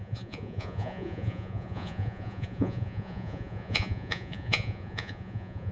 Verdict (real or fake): fake